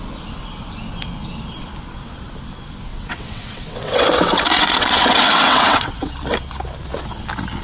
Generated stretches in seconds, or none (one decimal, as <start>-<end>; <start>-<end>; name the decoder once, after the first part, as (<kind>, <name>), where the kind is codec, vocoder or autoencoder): 2.9-6.1 (vocoder, WaveNeXt)